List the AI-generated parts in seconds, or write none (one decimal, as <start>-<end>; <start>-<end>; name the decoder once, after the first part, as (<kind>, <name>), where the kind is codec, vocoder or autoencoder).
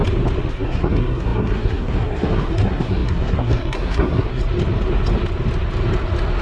0.5-4.4 (codec, SNAC)